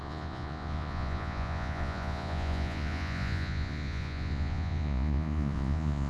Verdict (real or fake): fake